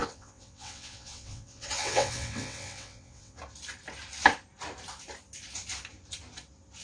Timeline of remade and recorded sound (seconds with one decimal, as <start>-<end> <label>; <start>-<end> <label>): 0.0-3.4 remade; 3.4-6.8 recorded